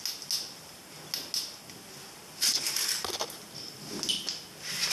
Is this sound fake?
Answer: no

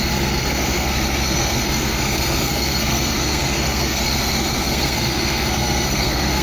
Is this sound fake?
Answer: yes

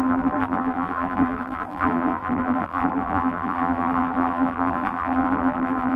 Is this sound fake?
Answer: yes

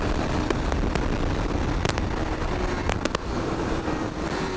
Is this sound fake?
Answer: yes